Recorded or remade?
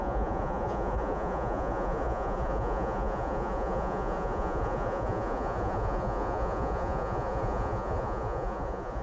remade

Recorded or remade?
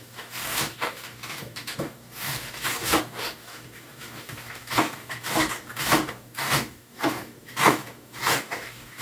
remade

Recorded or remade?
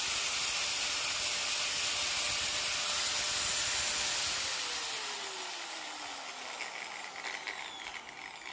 recorded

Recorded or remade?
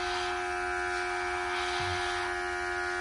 recorded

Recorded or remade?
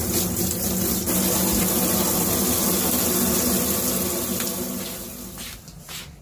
recorded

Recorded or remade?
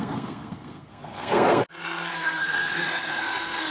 remade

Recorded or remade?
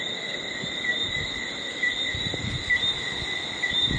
recorded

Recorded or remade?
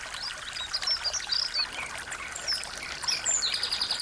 recorded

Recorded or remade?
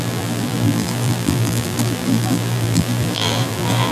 remade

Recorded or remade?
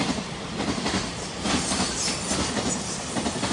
recorded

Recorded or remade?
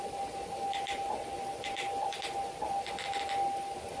recorded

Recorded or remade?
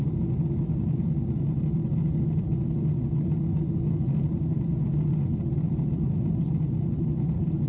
recorded